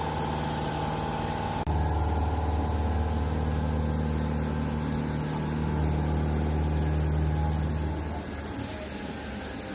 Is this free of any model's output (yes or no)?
yes